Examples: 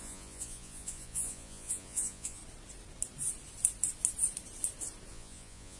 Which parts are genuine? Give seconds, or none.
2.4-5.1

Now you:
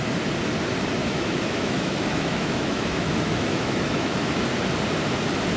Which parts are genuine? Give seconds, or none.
0.0-1.0; 4.4-5.6